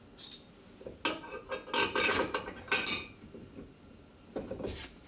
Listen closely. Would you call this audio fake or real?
real